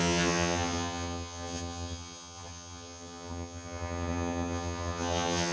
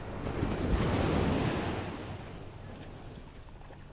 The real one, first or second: second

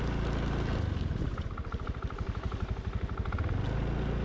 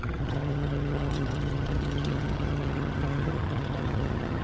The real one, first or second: first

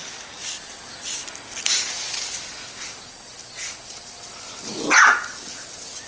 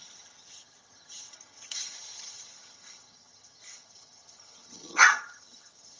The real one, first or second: first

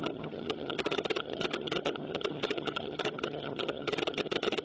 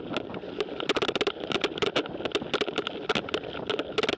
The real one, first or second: second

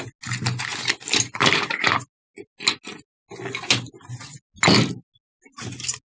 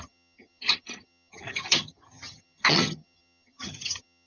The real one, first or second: first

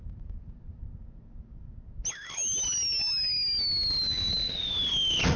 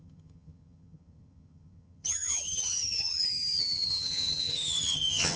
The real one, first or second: first